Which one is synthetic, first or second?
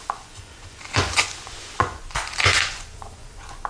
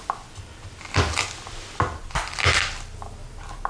first